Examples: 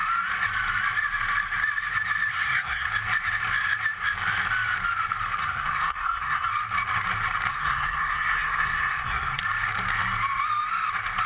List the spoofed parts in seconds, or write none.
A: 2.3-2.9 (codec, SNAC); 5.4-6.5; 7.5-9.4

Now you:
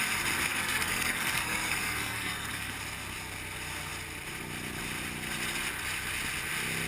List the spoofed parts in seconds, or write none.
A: 0.5-2.7 (codec, SNAC)